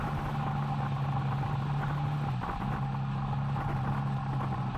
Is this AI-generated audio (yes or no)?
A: no